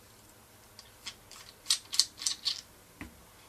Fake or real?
real